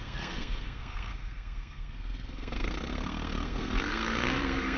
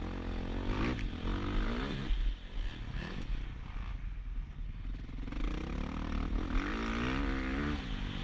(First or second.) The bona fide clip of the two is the second